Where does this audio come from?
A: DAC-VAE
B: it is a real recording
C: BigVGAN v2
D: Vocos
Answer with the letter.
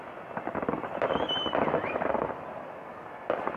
B